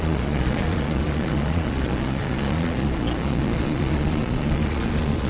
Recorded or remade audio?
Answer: remade